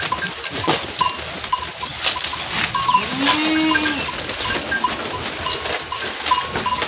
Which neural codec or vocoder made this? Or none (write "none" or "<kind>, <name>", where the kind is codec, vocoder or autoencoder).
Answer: none